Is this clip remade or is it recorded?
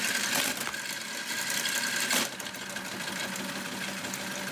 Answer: recorded